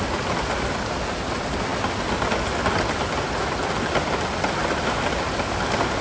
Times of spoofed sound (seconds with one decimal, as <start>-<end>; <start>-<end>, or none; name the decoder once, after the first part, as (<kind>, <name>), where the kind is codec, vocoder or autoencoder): none